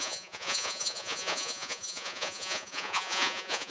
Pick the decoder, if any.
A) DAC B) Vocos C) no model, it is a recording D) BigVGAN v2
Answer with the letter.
B